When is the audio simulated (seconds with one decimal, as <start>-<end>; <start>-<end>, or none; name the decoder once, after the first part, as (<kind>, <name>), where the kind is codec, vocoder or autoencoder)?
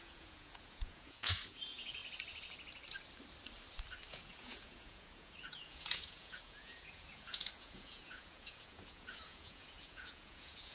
0.0-2.0 (vocoder, Vocos); 4.1-10.7